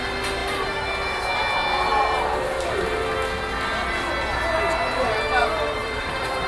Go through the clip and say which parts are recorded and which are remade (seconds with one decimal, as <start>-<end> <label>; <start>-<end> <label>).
0.0-1.9 recorded; 1.9-4.1 remade; 4.1-5.4 recorded; 5.4-6.5 remade